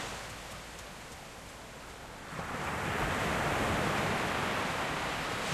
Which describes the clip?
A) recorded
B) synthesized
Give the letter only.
A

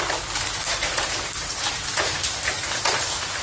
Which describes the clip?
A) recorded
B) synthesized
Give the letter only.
A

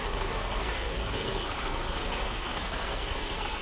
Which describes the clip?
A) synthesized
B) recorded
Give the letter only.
A